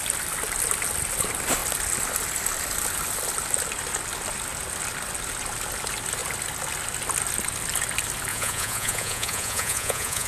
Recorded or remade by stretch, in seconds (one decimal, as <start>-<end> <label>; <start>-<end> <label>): 0.0-8.3 recorded; 8.3-10.3 remade